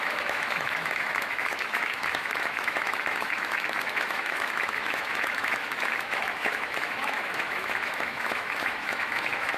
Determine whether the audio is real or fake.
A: fake